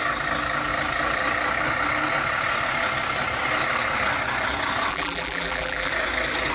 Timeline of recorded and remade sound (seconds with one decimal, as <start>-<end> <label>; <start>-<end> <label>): 0.0-4.9 recorded; 4.9-5.9 remade; 5.9-6.5 recorded